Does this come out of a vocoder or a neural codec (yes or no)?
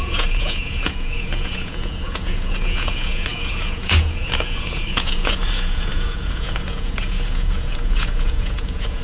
yes